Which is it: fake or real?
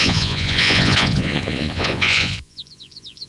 fake